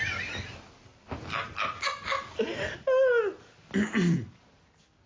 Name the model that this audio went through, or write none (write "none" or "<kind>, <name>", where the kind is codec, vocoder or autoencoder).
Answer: none